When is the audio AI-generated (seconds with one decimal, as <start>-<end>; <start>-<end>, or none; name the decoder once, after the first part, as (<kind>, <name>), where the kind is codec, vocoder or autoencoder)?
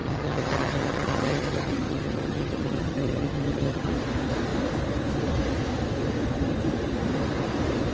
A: 0.0-3.9 (vocoder, HiFi-GAN)